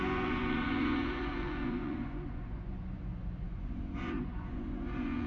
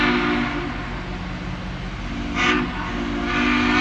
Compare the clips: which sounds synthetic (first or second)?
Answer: first